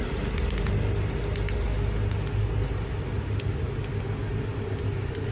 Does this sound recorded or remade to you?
recorded